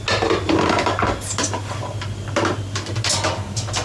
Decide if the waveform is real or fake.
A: real